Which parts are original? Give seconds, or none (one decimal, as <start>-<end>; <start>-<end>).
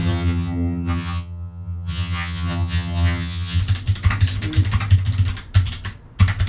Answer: 3.6-6.5